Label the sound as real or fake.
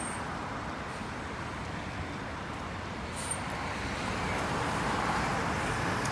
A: real